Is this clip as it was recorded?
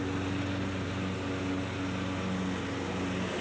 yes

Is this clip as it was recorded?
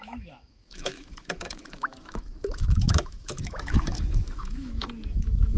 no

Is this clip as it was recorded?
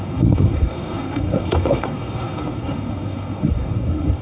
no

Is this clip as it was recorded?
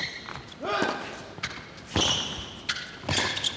yes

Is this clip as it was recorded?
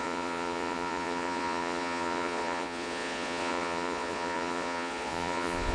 no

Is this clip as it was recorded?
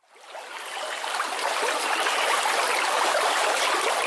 yes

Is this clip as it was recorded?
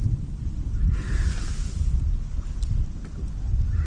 yes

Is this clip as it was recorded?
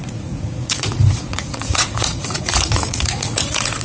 no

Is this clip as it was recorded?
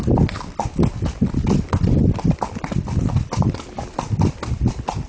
yes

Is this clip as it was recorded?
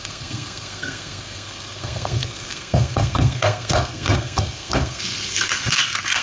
no